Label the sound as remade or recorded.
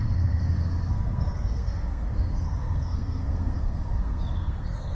remade